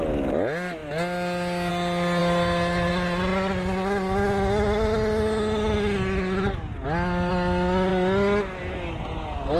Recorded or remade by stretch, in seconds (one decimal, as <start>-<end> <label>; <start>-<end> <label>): 0.0-9.6 recorded